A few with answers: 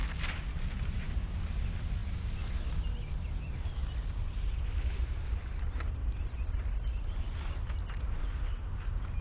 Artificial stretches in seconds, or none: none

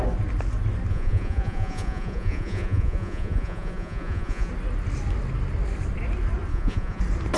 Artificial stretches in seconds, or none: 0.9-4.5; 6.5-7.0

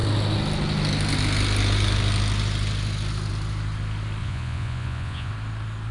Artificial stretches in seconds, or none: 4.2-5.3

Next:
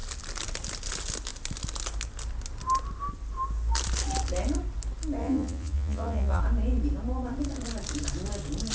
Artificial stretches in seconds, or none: 5.2-6.4

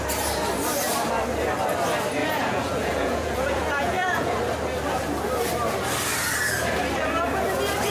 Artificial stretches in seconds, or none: 2.2-4.4

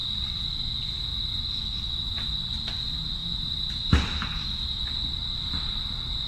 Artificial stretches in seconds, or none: none